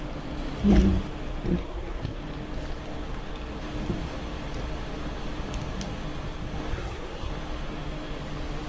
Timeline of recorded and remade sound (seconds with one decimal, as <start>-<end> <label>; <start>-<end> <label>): 0.0-1.5 recorded; 1.5-2.2 remade; 2.2-6.7 recorded; 6.7-7.3 remade; 7.3-8.7 recorded